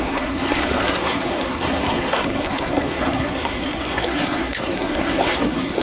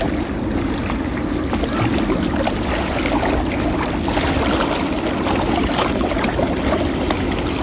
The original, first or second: second